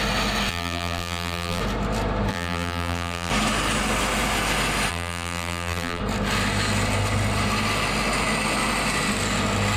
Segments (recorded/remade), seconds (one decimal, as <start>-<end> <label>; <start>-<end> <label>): 0.0-0.5 recorded; 0.5-1.6 remade; 1.6-2.3 recorded; 2.3-3.3 remade; 3.3-4.9 recorded; 4.9-6.0 remade; 6.0-9.8 recorded